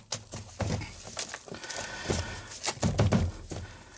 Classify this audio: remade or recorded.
recorded